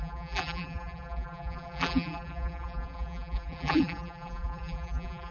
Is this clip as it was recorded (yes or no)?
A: no